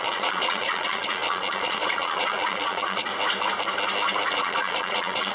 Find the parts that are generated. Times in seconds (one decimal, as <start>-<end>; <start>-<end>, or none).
0.0-3.1; 4.3-5.3